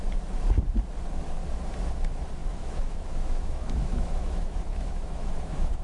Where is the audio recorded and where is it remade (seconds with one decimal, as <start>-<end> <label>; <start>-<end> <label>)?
0.0-2.4 recorded; 2.4-5.8 remade

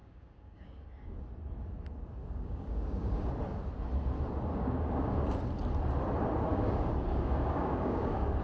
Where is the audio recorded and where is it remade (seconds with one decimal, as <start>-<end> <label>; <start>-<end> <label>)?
0.0-1.2 remade; 1.2-2.2 recorded; 2.2-3.3 remade; 3.3-4.5 recorded; 4.5-5.2 remade; 5.2-6.5 recorded; 6.5-8.4 remade

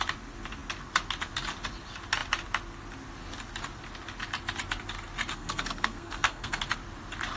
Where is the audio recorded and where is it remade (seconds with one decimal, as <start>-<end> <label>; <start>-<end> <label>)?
0.0-5.3 recorded; 5.3-6.6 remade; 6.6-7.4 recorded

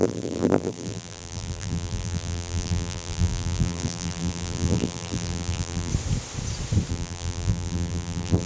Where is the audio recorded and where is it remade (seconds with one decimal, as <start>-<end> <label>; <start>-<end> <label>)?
0.0-5.9 remade; 5.9-6.9 recorded; 6.9-8.5 remade

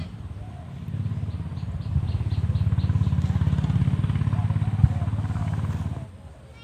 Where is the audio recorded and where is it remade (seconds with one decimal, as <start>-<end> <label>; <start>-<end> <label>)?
0.0-6.6 recorded

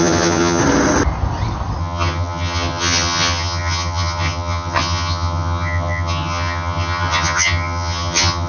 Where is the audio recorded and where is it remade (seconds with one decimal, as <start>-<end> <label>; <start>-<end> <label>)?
0.0-0.6 remade; 0.6-1.8 recorded; 1.8-8.5 remade

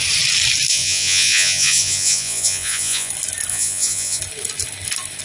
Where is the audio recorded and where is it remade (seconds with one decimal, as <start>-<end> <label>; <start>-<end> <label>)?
0.0-0.7 recorded; 0.7-3.1 remade; 3.1-3.5 recorded; 3.5-4.2 remade; 4.2-5.2 recorded